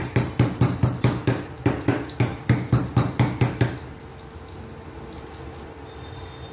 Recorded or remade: recorded